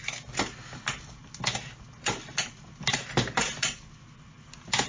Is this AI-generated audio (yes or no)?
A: no